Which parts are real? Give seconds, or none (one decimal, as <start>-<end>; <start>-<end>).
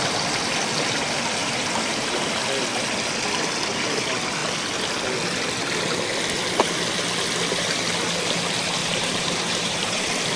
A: 0.0-1.4; 2.3-8.8